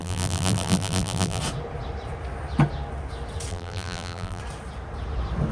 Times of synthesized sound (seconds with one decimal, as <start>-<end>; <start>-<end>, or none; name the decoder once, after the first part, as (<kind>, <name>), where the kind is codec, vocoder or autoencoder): 0.0-1.4 (vocoder, BigVGAN v2); 3.5-4.4